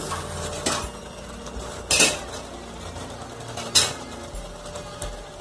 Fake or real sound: real